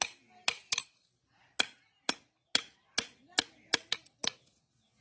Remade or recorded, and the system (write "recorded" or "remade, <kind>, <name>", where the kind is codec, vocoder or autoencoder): recorded